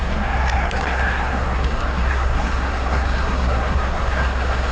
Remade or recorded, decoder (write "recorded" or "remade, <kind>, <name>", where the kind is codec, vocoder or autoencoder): remade, codec, SNAC